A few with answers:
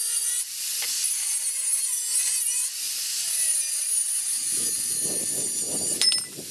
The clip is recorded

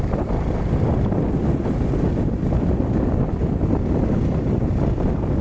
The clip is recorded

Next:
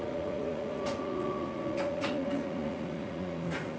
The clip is remade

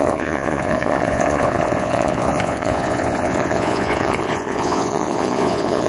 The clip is remade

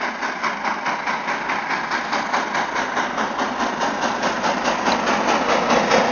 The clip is recorded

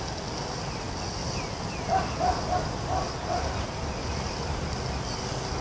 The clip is recorded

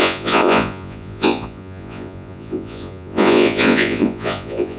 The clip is remade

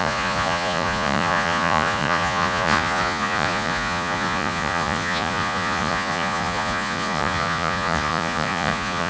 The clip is remade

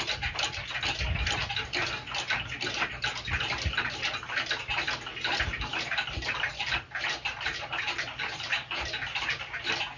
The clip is recorded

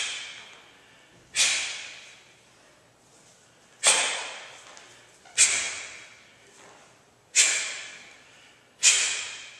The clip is recorded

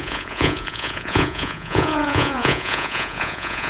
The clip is remade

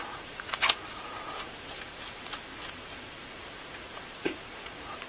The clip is remade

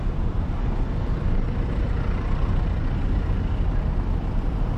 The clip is recorded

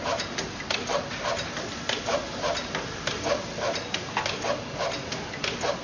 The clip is recorded